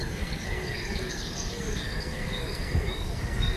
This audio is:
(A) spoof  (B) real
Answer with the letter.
A